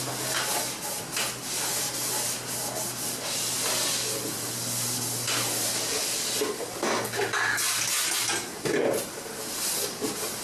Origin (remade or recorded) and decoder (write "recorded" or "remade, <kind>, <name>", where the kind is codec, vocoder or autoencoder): recorded